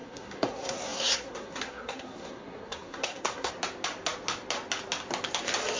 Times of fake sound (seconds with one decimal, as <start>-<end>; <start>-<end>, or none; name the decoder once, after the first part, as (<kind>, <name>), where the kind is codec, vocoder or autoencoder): 0.0-3.5 (codec, SNAC)